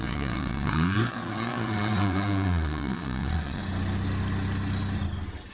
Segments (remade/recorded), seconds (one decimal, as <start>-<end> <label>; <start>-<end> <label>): 0.0-3.6 remade; 3.6-5.5 recorded